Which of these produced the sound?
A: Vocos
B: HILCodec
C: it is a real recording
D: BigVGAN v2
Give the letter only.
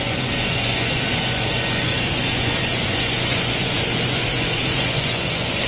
A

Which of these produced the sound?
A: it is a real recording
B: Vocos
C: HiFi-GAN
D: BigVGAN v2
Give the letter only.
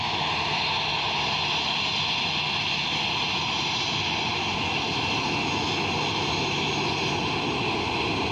A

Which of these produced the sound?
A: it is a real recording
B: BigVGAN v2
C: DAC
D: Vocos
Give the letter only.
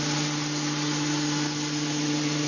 A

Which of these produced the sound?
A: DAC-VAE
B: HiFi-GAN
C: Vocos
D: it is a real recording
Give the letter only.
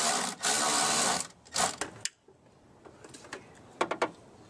D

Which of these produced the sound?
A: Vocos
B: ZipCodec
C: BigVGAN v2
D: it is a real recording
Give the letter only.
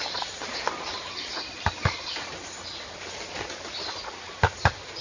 D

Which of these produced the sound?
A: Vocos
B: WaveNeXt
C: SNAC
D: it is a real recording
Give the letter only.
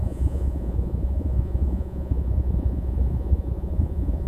A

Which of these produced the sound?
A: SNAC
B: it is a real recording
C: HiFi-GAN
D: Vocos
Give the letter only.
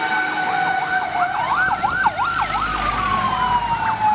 B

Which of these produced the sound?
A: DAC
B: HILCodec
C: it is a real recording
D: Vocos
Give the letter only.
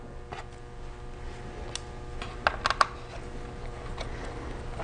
C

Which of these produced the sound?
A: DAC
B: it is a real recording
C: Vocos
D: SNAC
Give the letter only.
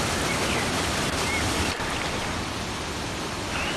B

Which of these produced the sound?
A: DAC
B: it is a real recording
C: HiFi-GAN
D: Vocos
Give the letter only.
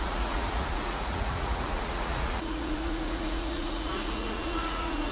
D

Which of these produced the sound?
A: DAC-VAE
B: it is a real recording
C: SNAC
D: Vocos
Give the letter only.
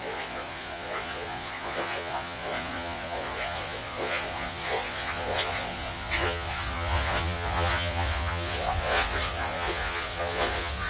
D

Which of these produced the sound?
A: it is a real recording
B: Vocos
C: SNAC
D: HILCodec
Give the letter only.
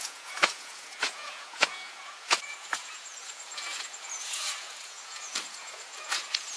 B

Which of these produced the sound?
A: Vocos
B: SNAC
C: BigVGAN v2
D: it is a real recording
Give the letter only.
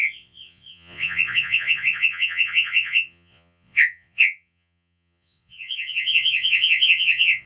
A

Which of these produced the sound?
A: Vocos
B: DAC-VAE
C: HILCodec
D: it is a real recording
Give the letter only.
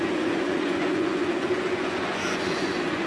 A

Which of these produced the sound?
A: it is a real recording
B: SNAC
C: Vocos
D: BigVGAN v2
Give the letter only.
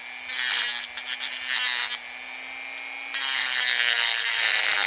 A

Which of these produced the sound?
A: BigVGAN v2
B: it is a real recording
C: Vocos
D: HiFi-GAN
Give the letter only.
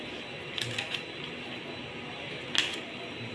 B